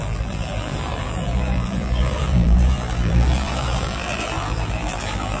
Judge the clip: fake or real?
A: fake